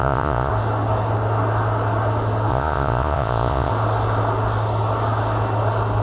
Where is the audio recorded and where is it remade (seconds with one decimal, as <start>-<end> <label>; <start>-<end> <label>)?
0.0-0.5 remade; 0.5-2.5 recorded; 2.5-3.7 remade; 3.7-6.0 recorded